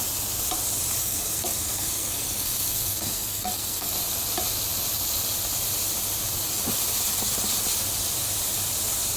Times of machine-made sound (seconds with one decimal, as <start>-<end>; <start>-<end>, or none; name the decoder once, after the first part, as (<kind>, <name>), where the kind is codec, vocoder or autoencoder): 1.0-3.9 (codec, SNAC)